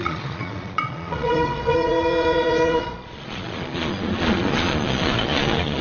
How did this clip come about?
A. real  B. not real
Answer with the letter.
B